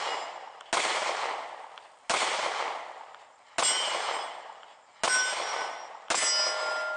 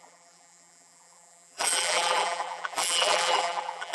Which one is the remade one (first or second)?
second